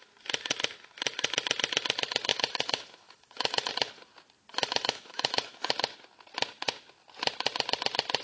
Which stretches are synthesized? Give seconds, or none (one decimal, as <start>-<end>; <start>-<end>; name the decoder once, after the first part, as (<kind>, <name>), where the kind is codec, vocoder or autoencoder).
2.3-3.7 (autoencoder, DAC-VAE); 4.5-5.6